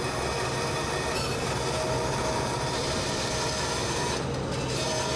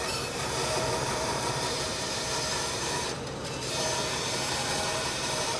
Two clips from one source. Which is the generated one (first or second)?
second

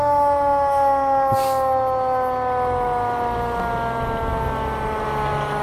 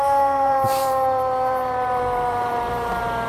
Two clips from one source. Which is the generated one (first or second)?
second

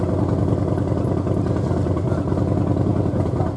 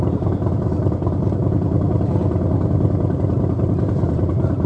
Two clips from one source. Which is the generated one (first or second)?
second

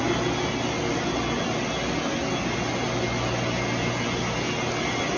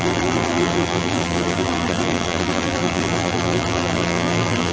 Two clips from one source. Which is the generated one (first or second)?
second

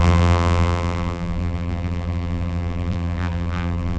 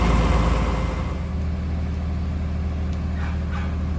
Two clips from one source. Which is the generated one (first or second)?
first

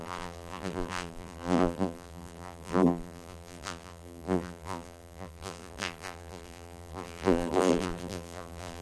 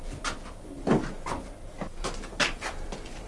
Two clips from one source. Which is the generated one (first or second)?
first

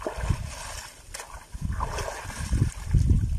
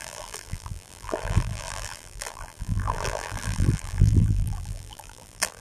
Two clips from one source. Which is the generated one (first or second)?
second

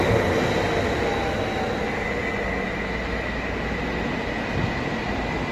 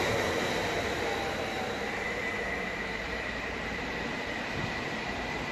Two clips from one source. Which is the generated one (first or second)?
second